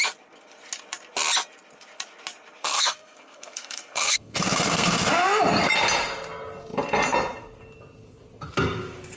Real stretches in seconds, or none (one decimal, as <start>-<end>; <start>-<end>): 0.0-2.6; 5.1-9.2